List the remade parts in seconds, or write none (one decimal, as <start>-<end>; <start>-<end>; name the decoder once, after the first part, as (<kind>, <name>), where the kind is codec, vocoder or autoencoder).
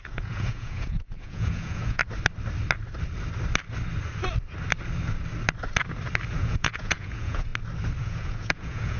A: 0.0-2.0 (vocoder, Vocos); 6.3-7.5; 8.0-9.0